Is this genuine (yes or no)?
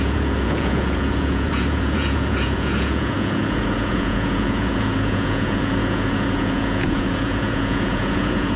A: no